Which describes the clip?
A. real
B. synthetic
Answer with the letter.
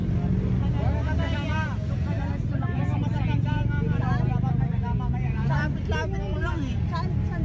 A